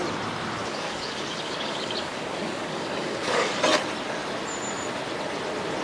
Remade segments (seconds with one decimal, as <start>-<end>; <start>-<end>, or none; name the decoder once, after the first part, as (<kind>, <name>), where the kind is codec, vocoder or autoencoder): 0.6-3.5 (codec, DAC)